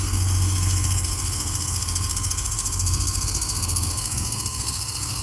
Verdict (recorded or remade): remade